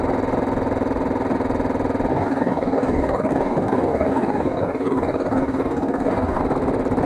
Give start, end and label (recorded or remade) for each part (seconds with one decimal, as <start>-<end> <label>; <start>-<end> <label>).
0.0-2.1 recorded; 2.1-6.4 remade; 6.4-7.1 recorded